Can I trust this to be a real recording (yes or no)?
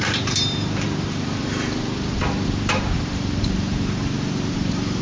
no